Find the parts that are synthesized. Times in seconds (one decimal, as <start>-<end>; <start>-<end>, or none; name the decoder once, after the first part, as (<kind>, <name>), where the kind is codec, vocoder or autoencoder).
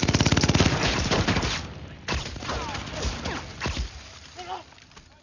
none